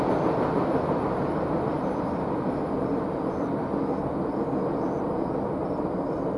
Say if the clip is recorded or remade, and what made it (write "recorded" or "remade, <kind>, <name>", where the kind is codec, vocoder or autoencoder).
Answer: recorded